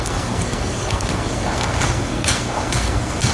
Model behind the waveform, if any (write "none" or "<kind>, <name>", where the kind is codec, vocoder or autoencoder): codec, SNAC